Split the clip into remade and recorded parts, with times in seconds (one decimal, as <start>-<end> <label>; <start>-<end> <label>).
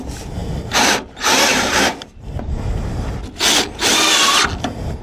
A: 0.0-0.4 recorded; 0.4-3.1 remade; 3.1-5.0 recorded